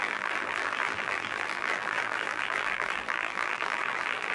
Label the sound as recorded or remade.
remade